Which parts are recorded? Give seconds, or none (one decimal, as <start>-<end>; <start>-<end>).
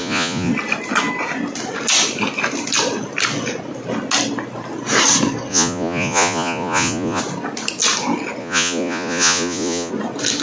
0.5-5.5; 7.2-8.4; 9.9-10.4